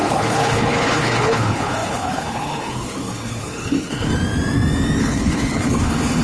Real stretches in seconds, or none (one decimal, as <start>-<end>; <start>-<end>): 4.1-5.0